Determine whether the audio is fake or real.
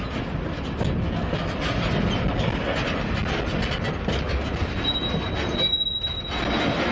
real